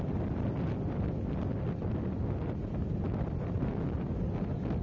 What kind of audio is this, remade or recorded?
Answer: recorded